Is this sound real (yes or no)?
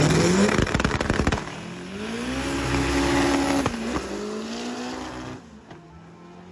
yes